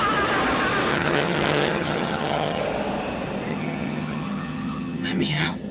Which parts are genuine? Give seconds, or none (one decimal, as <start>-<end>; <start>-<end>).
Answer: 0.0-0.9; 2.6-3.5